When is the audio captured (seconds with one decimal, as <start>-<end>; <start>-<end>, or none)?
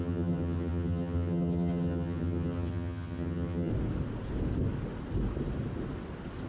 3.7-6.5